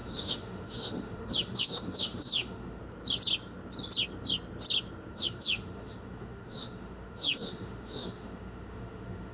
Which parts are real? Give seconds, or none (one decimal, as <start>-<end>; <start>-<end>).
2.8-5.1